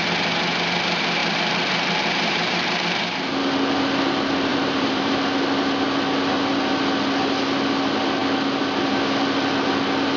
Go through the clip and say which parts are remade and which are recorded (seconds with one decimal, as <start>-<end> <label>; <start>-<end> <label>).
0.0-1.2 recorded; 1.2-3.3 remade; 3.3-4.5 recorded; 4.5-5.1 remade; 5.1-10.2 recorded